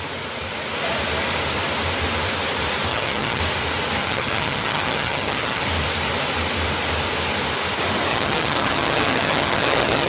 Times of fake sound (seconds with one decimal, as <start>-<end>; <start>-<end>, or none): 2.9-3.4; 4.0-5.6; 8.1-10.1